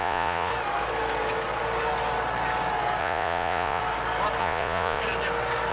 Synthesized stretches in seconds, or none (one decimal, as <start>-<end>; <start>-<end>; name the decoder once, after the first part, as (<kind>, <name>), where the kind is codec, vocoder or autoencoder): 0.0-0.5 (vocoder, Vocos); 3.0-3.8; 4.4-5.0

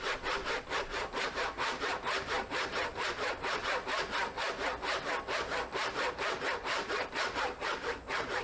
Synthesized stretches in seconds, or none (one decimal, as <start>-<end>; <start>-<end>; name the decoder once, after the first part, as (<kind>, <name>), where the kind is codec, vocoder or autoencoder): 0.0-3.6 (vocoder, BigVGAN v2); 6.1-8.4

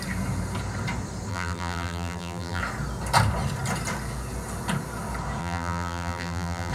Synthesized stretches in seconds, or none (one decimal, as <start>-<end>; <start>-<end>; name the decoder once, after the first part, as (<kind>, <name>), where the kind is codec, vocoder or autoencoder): 1.3-2.6 (vocoder, BigVGAN v2); 5.4-6.7